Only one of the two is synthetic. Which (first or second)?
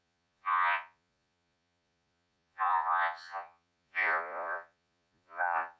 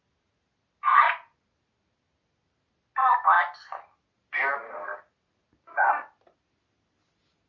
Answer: first